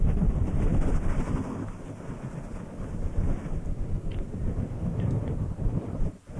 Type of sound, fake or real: real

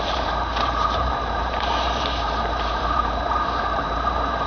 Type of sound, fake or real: fake